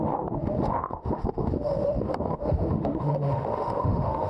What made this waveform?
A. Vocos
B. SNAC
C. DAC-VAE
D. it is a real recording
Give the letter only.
C